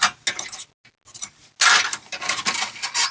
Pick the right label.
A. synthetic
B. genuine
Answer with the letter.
B